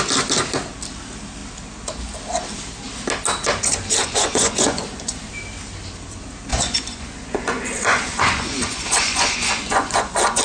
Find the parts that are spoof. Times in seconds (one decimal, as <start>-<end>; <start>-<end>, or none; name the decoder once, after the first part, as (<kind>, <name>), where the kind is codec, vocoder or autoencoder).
4.0-5.3 (vocoder, Vocos); 6.5-10.4